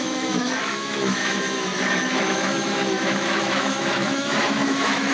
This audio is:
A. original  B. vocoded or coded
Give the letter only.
B